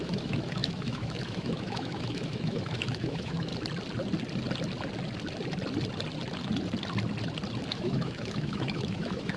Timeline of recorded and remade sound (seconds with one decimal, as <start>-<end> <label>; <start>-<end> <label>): 0.0-3.5 remade; 3.5-7.7 recorded; 7.7-9.4 remade